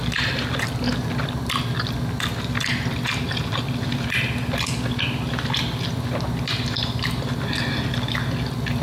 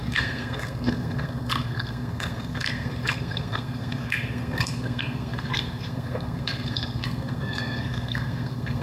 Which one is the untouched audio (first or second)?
first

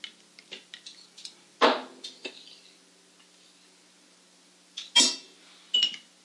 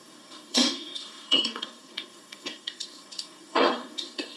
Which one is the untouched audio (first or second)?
first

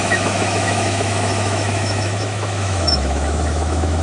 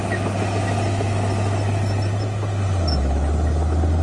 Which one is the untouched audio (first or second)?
second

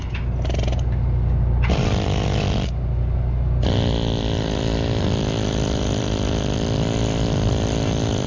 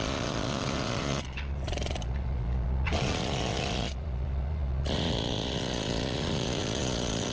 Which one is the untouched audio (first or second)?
first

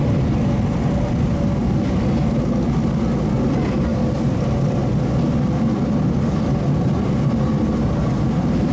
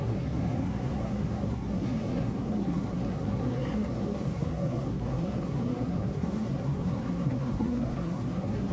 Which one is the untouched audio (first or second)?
first